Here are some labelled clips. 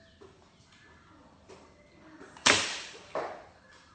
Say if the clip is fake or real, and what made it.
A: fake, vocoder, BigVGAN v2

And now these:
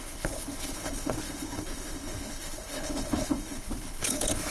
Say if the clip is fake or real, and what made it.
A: fake, codec, HILCodec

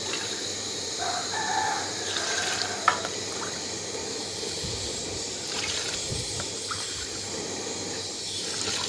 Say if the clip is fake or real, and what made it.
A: fake, vocoder, BigVGAN v2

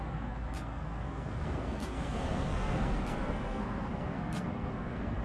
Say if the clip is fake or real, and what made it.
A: fake, codec, SNAC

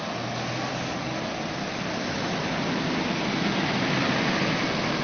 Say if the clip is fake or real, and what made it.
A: real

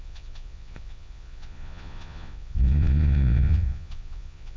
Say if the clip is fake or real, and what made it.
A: fake, vocoder, Vocos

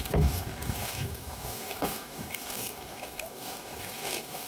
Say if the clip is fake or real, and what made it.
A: fake, codec, DAC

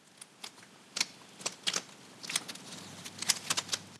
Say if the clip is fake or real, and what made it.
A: real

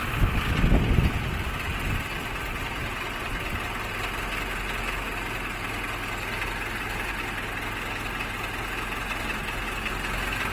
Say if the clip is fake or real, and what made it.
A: real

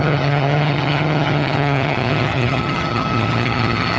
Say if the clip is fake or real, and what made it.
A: fake, vocoder, HiFi-GAN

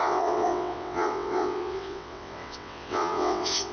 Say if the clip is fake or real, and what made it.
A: fake, vocoder, WaveNeXt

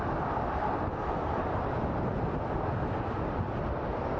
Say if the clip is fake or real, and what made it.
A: real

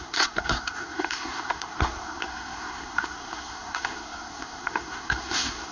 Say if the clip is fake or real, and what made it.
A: fake, codec, SNAC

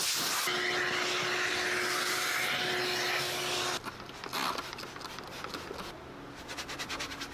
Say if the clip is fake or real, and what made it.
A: real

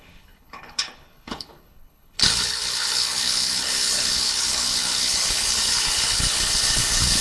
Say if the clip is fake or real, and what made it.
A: fake, codec, HILCodec